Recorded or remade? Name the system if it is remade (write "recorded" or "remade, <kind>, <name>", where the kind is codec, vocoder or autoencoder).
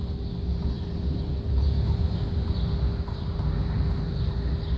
recorded